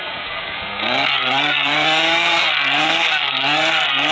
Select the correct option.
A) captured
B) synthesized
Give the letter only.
B